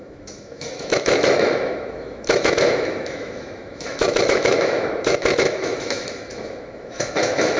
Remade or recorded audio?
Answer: remade